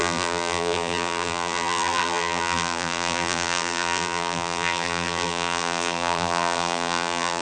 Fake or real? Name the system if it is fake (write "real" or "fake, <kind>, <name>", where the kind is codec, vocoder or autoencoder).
fake, vocoder, BigVGAN v2